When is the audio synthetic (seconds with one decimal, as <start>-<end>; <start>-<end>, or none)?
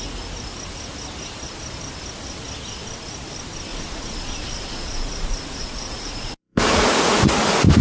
3.7-7.3